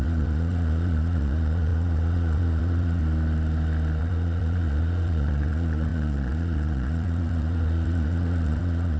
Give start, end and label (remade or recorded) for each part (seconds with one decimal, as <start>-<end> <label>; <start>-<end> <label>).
0.0-3.0 remade; 3.0-4.0 recorded; 4.0-9.0 remade